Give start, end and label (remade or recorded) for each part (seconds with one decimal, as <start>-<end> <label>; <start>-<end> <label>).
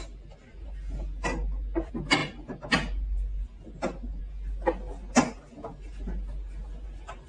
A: 0.0-7.3 recorded